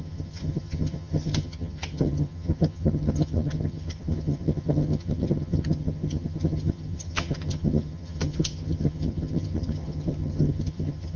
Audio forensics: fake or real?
fake